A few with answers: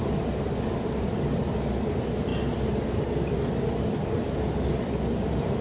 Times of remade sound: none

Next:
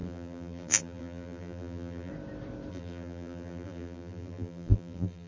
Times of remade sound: 0.0-2.1 (vocoder, BigVGAN v2); 2.7-5.3

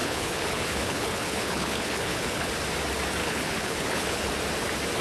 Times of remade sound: 0.0-2.5 (codec, HILCodec); 3.2-4.3

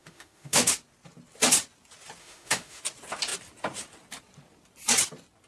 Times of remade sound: 0.0-0.7 (autoencoder, DAC-VAE); 2.2-2.8

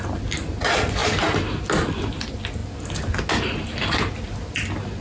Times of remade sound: none

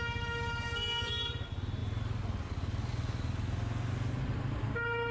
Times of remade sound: none